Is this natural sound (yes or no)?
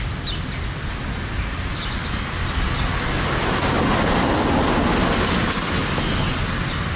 yes